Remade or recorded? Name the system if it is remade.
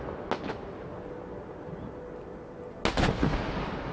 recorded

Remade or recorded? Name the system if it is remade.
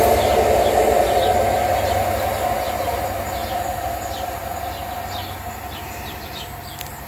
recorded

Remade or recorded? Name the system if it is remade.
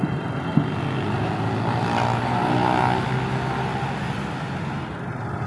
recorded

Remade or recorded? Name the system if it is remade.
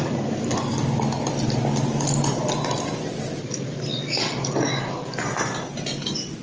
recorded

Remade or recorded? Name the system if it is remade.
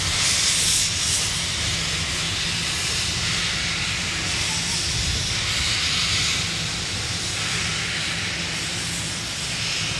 recorded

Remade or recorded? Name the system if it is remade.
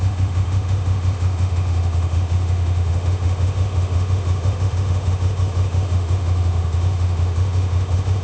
remade, autoencoder, DAC-VAE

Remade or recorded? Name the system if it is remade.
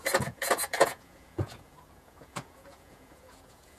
remade, vocoder, Vocos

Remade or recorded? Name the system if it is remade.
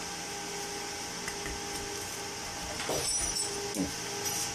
recorded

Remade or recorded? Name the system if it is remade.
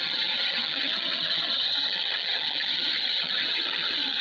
remade, vocoder, HiFi-GAN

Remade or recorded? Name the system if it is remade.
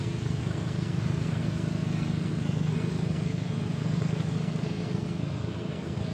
remade, codec, SNAC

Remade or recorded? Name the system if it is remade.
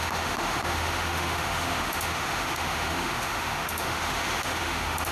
remade, autoencoder, DAC-VAE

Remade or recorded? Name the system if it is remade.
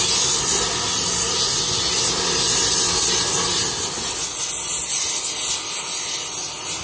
recorded